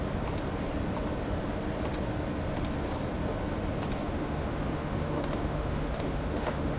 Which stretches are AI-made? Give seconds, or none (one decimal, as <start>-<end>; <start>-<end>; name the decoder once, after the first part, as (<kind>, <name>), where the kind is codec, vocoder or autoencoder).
4.0-6.8 (autoencoder, DAC-VAE)